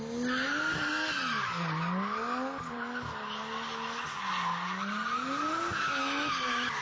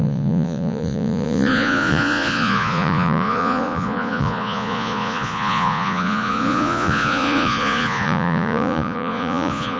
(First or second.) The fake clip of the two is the second